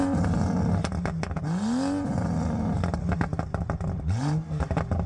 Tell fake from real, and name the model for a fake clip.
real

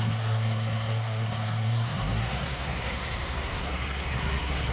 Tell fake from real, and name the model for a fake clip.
fake, codec, SNAC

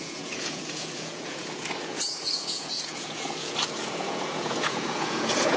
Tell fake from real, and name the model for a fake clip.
fake, vocoder, Vocos